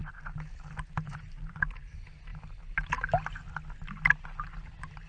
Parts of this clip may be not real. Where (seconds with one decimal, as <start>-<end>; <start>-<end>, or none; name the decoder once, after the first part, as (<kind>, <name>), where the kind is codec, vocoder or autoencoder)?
none